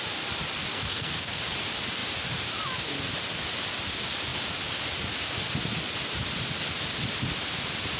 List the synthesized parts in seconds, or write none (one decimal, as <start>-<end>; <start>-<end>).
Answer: 0.7-1.4